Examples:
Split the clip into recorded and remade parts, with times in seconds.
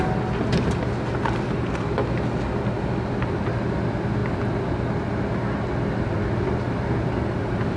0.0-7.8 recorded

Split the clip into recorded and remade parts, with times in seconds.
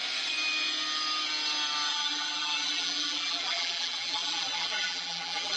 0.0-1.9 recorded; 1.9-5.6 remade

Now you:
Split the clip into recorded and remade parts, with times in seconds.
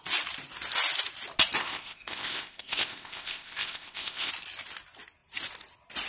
0.0-1.6 recorded; 1.6-4.3 remade; 4.3-6.1 recorded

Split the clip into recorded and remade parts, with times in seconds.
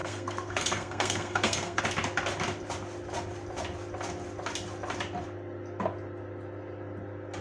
0.0-1.8 remade; 1.8-7.4 recorded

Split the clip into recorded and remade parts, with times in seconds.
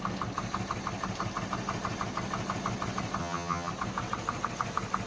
0.0-3.2 recorded; 3.2-3.7 remade; 3.7-5.1 recorded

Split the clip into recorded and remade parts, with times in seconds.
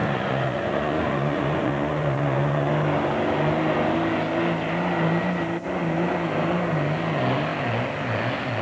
0.0-2.7 remade; 2.7-8.6 recorded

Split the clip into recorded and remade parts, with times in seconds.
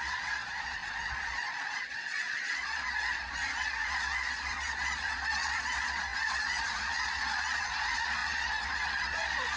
0.0-9.6 remade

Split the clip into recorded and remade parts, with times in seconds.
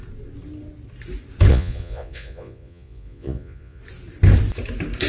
0.0-1.5 recorded; 1.5-3.8 remade; 3.8-5.1 recorded